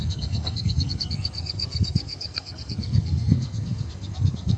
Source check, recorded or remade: remade